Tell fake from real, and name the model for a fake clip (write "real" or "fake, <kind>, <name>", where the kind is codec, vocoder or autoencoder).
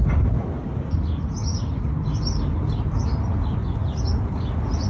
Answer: real